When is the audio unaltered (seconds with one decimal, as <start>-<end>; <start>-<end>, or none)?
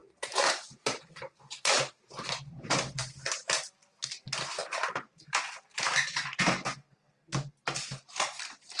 4.0-4.6; 6.2-8.8